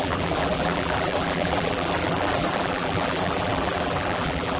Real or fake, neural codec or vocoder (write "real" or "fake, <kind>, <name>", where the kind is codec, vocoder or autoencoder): fake, vocoder, BigVGAN v2